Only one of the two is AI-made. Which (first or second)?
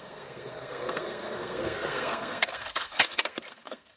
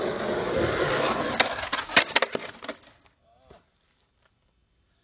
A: first